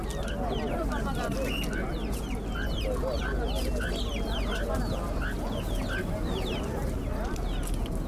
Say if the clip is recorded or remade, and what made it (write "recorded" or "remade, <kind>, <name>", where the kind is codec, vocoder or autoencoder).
recorded